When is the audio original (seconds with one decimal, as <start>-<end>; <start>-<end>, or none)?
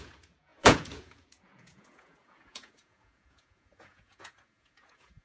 none